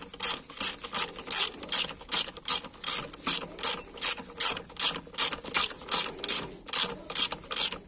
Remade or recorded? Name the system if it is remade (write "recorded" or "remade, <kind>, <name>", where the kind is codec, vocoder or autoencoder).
recorded